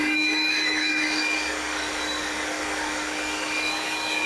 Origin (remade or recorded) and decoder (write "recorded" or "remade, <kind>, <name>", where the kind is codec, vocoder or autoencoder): remade, codec, DAC